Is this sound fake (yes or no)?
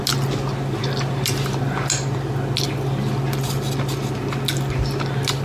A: no